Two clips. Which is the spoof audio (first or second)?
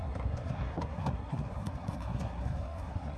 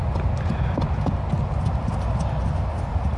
first